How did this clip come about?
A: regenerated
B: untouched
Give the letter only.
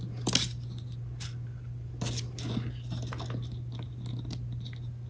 B